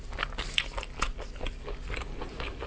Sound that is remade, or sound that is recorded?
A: recorded